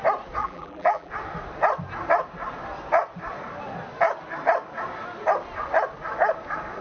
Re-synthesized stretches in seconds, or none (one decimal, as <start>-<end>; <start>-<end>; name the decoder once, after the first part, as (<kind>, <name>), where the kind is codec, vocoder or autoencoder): 0.4-1.1 (vocoder, BigVGAN v2)